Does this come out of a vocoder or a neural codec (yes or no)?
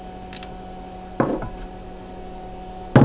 no